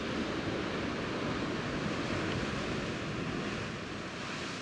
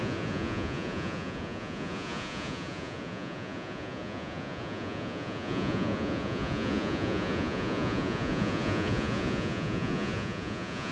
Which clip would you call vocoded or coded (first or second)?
second